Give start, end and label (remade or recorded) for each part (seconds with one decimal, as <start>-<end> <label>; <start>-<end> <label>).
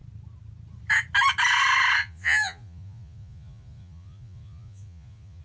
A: 0.0-2.0 recorded; 2.0-5.4 remade